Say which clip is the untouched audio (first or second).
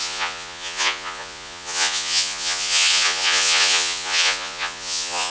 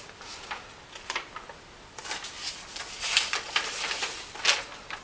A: second